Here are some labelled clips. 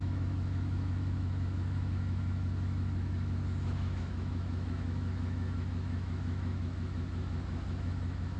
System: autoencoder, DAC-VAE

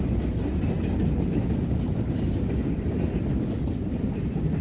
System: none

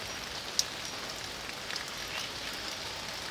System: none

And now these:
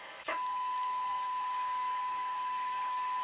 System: codec, DAC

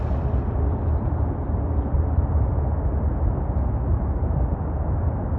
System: none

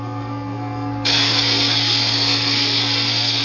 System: codec, SNAC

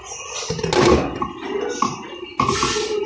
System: none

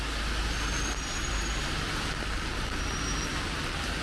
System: none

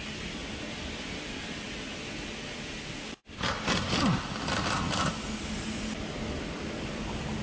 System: none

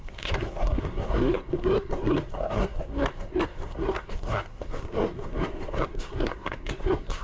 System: codec, SNAC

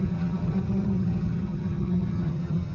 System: vocoder, HiFi-GAN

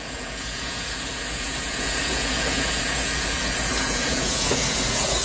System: vocoder, Vocos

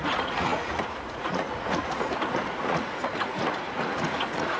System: vocoder, Vocos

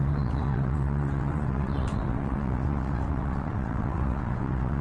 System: vocoder, WaveNeXt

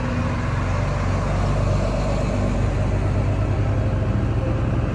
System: none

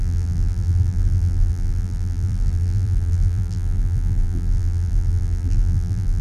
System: vocoder, BigVGAN v2